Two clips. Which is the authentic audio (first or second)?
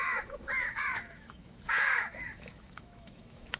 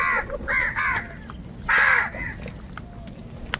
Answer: second